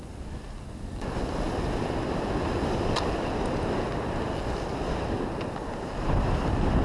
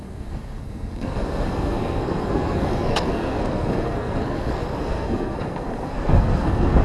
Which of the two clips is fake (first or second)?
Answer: second